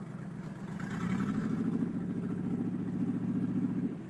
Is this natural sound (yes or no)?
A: yes